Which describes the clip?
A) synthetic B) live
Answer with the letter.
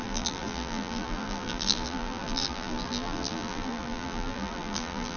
A